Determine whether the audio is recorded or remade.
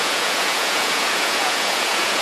remade